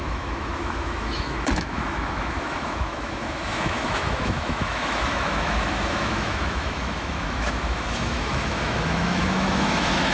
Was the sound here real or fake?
fake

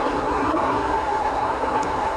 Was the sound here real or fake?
fake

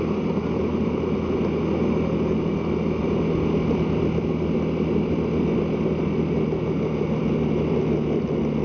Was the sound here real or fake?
real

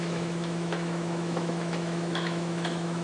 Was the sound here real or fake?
fake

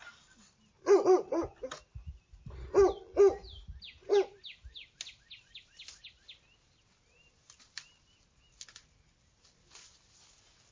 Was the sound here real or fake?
real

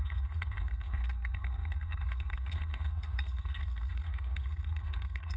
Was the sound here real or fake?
fake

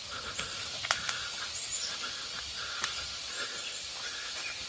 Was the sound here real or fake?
real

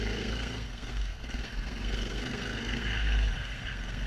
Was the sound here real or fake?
fake